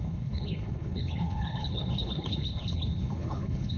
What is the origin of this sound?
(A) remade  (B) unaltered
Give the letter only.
A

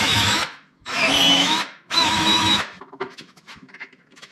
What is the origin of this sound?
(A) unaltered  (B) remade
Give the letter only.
B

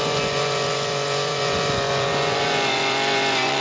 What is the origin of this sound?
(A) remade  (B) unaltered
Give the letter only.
A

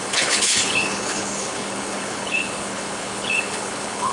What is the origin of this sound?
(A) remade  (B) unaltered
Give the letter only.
A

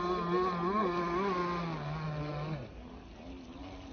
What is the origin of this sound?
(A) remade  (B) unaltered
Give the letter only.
B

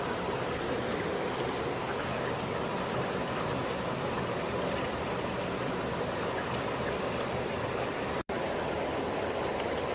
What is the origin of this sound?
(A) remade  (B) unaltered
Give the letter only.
A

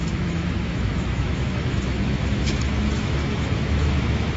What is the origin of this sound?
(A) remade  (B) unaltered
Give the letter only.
A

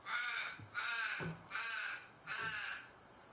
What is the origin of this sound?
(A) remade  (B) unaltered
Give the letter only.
B